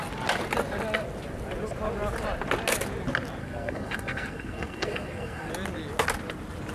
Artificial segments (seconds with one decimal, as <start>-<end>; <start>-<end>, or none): 3.4-5.5